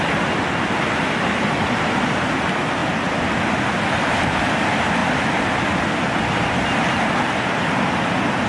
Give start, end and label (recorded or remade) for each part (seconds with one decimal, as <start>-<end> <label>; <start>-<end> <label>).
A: 0.0-8.5 recorded